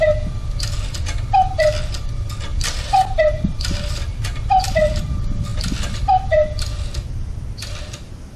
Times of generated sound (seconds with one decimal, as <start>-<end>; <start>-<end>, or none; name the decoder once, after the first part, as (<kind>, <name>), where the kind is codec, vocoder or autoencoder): 2.5-5.0 (vocoder, BigVGAN v2); 5.5-6.2